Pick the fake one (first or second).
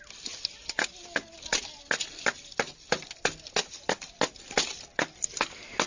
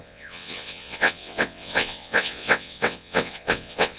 second